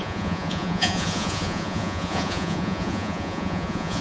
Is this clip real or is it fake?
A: fake